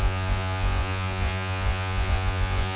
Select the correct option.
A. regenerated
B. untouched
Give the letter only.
A